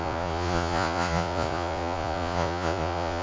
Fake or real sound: fake